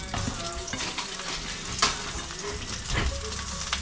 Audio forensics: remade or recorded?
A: recorded